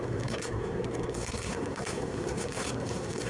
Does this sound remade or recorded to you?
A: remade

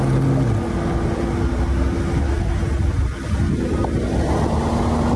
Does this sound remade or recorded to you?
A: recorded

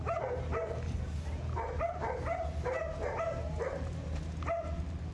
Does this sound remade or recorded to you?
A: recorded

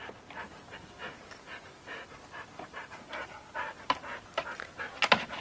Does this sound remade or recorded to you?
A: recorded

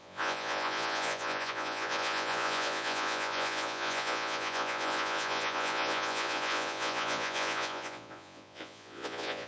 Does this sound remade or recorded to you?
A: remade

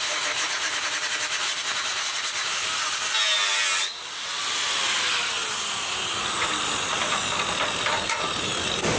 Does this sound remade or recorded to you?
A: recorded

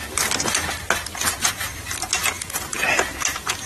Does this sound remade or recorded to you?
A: recorded